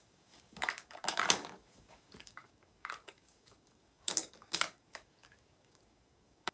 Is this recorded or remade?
remade